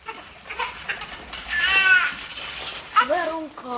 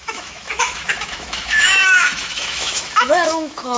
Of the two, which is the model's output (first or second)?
second